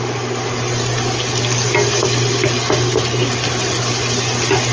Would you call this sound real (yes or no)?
yes